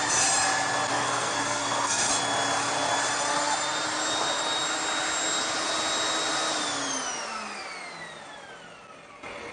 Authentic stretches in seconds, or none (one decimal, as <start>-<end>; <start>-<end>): 0.0-0.9; 2.1-9.5

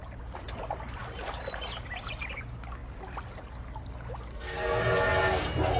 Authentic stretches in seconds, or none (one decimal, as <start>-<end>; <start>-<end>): 0.0-4.3; 4.8-5.8

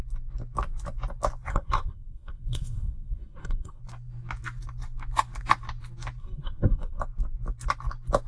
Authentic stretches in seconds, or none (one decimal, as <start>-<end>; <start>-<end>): 0.0-1.5; 3.8-6.2; 7.0-8.3

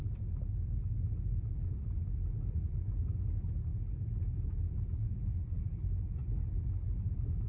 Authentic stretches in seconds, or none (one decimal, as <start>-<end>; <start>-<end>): 0.0-7.5

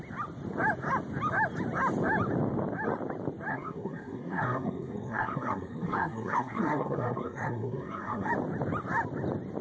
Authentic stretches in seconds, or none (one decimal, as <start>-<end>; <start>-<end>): 0.0-3.5; 8.3-9.6

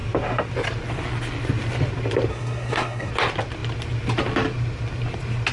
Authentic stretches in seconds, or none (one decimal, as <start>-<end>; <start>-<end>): 0.0-2.3; 3.1-5.5